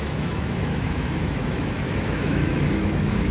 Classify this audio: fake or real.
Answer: fake